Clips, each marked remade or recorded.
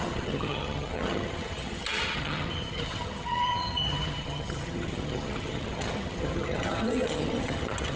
remade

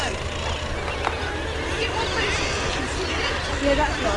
recorded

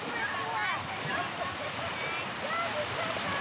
recorded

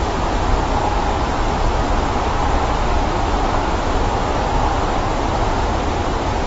recorded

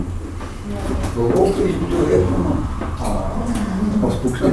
recorded